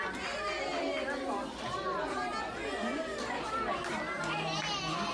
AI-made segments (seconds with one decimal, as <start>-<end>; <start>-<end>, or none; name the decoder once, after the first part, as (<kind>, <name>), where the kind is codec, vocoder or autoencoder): none